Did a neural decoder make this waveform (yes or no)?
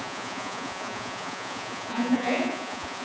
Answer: yes